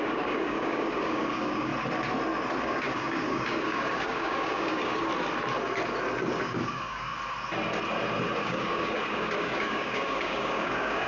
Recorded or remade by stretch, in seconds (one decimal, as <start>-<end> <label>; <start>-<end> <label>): 0.0-1.7 remade; 1.7-2.6 recorded; 2.6-5.1 remade; 5.1-6.4 recorded; 6.4-7.1 remade; 7.1-8.4 recorded; 8.4-11.1 remade